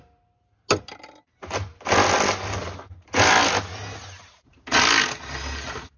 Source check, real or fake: real